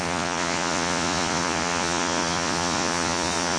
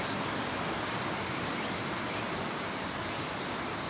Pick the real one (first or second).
second